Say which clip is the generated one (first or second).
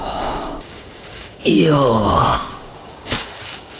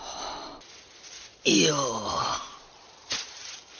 first